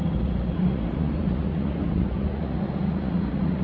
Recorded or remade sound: remade